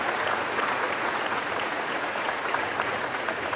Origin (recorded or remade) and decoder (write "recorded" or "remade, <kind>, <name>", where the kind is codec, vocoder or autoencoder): remade, vocoder, Vocos